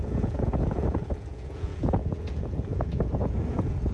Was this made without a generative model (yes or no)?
no